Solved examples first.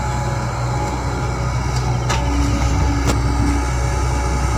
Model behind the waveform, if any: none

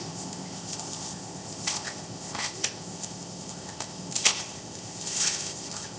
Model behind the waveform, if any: codec, ZipCodec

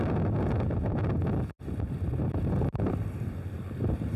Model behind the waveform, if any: vocoder, BigVGAN v2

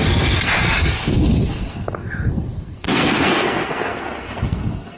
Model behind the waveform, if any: codec, SNAC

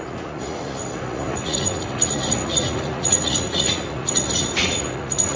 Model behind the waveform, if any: vocoder, Vocos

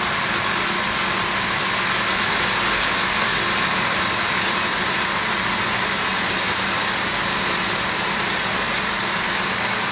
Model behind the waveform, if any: none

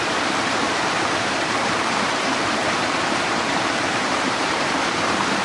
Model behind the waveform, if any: vocoder, BigVGAN v2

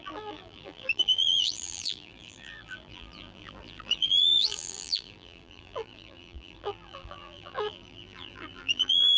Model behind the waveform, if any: vocoder, BigVGAN v2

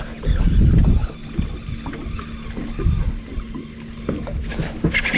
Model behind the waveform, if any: none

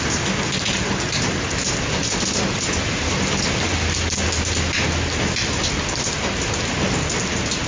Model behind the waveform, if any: none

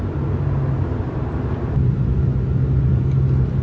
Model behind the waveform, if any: none